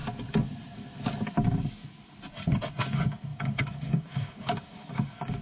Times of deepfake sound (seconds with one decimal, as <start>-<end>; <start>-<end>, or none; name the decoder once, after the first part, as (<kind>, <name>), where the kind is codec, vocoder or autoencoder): 2.8-5.4 (codec, DAC)